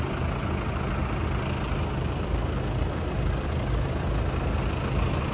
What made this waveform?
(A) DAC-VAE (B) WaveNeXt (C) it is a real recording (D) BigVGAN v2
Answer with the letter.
C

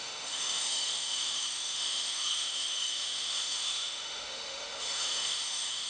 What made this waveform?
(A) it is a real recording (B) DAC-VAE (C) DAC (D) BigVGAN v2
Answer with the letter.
B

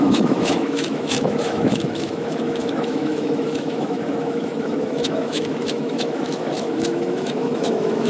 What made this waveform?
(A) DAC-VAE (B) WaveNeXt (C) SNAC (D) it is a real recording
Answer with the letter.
A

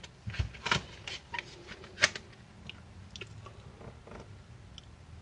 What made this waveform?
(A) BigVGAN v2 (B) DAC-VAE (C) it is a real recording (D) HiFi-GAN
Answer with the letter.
C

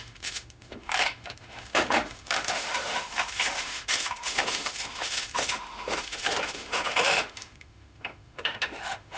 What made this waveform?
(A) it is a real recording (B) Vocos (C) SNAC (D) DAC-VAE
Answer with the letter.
D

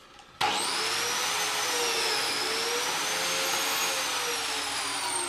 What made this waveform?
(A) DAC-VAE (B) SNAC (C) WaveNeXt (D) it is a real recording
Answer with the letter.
D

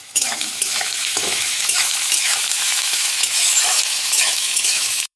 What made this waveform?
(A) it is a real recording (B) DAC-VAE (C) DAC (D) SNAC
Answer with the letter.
B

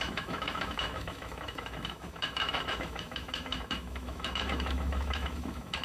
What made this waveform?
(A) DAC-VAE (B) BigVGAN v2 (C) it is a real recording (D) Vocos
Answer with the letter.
A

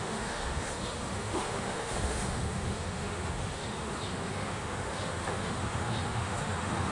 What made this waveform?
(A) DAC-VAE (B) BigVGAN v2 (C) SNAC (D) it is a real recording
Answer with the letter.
A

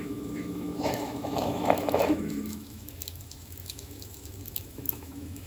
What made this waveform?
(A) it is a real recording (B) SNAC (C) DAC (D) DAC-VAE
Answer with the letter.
D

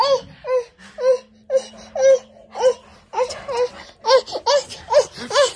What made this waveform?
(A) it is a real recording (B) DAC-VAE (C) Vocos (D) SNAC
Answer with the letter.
A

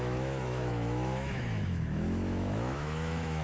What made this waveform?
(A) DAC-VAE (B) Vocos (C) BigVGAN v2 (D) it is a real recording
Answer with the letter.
A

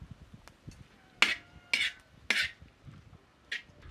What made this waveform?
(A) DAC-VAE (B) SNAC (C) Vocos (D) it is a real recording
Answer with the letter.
D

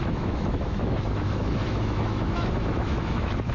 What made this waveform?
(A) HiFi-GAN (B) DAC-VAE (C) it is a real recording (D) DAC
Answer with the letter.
B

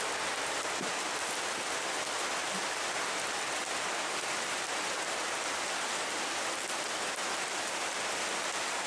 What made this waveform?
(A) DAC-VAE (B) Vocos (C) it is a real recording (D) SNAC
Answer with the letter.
C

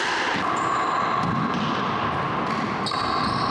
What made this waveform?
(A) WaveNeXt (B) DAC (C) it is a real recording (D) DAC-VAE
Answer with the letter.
C